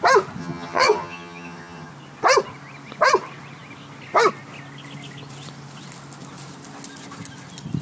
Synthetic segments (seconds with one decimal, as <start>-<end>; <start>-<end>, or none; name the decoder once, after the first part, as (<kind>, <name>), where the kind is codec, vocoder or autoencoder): 0.4-1.9 (vocoder, HiFi-GAN)